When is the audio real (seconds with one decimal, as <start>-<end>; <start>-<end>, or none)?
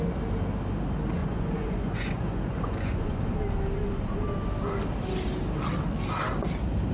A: 0.0-1.2; 3.2-6.9